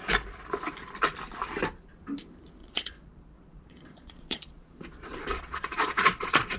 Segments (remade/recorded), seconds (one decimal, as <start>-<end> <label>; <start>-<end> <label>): 0.0-2.6 recorded; 2.6-6.6 remade